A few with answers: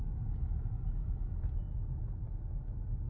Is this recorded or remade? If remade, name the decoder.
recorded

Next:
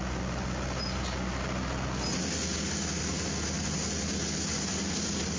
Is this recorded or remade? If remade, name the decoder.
recorded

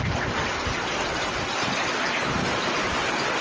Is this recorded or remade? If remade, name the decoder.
recorded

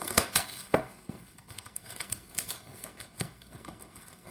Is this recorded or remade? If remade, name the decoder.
remade, codec, SNAC